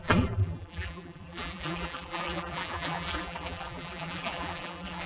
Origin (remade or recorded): remade